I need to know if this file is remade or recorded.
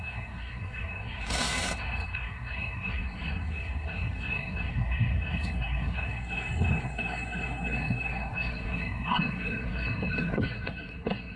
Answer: remade